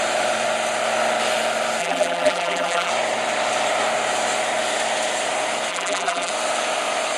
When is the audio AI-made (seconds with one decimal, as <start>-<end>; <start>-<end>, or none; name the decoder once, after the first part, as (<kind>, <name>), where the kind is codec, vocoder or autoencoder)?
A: 1.8-2.9 (vocoder, BigVGAN v2); 5.7-6.3